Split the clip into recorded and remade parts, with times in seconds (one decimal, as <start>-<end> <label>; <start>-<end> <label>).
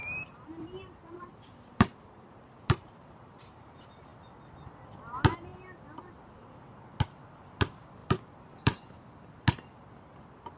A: 0.0-3.6 remade; 3.6-8.0 recorded; 8.0-9.4 remade; 9.4-10.6 recorded